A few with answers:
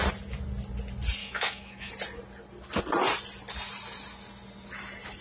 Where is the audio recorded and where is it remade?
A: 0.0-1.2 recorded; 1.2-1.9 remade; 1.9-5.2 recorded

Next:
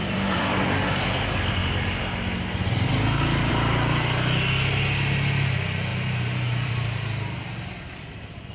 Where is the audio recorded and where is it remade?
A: 0.0-1.2 remade; 1.2-5.9 recorded; 5.9-6.7 remade; 6.7-8.5 recorded

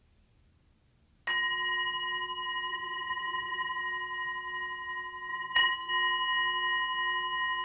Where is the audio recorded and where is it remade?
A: 0.0-2.7 recorded; 2.7-3.8 remade; 3.8-5.3 recorded; 5.3-5.9 remade; 5.9-7.6 recorded

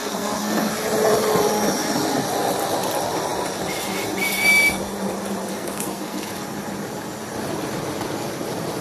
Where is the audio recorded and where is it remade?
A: 0.0-0.7 remade; 0.7-5.5 recorded; 5.5-6.3 remade; 6.3-8.8 recorded